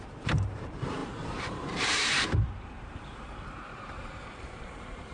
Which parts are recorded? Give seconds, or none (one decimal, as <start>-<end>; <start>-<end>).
none